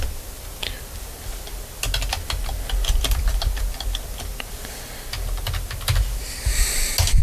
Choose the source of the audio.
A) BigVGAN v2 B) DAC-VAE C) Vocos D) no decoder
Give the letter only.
D